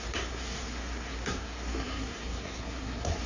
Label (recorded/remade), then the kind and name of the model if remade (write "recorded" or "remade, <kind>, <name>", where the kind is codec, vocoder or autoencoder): remade, codec, SNAC